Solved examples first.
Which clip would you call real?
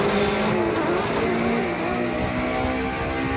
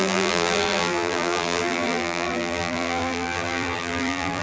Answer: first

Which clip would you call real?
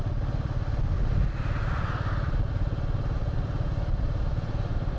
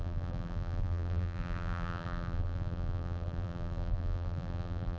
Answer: first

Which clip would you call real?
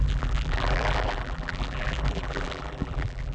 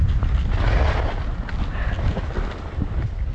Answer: second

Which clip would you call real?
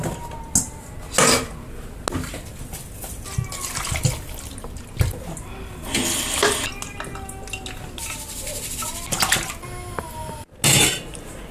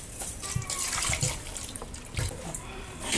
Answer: first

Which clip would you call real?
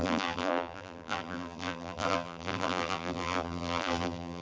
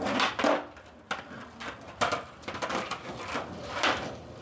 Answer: second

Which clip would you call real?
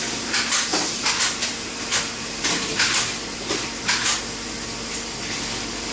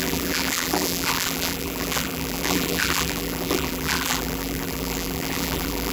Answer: first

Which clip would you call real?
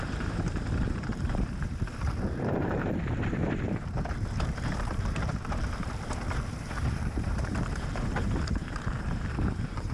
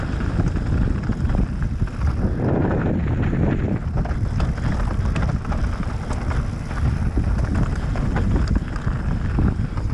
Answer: second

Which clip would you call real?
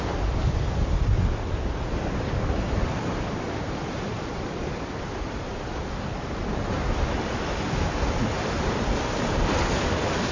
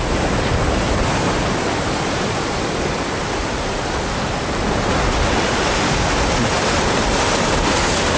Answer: second